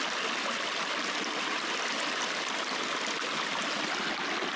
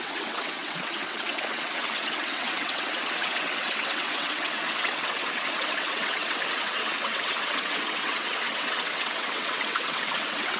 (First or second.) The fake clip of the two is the second